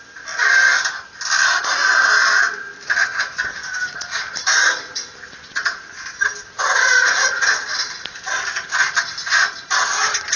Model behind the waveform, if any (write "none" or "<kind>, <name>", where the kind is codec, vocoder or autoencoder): none